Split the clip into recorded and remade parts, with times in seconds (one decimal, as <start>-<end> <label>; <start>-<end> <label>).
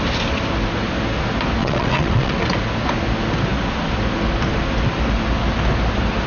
0.0-1.6 recorded; 1.6-2.4 remade; 2.4-6.3 recorded